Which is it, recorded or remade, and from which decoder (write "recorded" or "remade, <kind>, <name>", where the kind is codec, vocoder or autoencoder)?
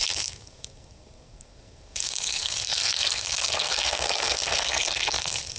remade, codec, SNAC